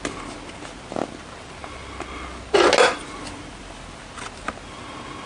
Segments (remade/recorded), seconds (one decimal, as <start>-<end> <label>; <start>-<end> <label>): 0.0-5.3 recorded